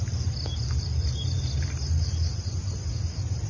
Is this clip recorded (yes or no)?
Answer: yes